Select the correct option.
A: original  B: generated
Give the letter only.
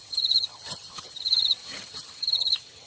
B